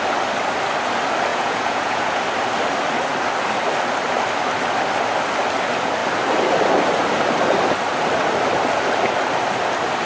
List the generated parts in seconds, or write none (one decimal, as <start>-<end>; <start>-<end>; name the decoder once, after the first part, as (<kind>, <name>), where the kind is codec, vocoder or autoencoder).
1.3-2.2 (vocoder, Vocos)

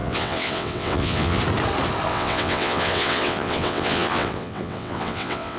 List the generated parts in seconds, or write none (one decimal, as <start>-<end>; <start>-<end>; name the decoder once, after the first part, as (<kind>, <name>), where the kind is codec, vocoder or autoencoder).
0.0-1.4 (vocoder, WaveNeXt); 2.1-5.6

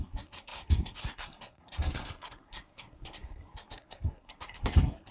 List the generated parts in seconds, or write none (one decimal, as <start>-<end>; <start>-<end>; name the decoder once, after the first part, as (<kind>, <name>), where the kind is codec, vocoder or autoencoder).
0.0-5.1 (codec, SNAC)

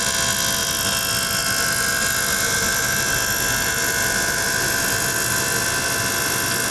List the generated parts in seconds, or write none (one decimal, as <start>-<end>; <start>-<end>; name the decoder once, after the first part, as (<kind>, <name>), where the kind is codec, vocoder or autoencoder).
none